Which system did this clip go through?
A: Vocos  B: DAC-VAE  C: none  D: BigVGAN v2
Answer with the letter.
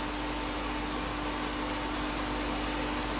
C